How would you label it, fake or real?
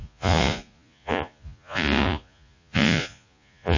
fake